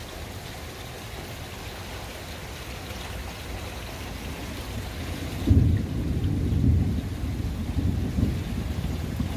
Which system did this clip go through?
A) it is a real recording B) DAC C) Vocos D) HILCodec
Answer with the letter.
A